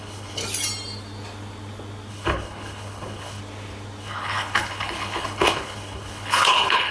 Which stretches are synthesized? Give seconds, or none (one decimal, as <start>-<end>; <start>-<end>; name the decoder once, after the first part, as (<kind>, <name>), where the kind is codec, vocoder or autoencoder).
0.0-0.4 (codec, HILCodec); 2.1-3.4; 4.0-6.9